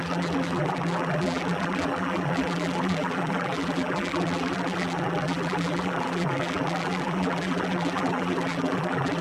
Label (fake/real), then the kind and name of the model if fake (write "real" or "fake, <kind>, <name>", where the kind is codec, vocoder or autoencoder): fake, vocoder, BigVGAN v2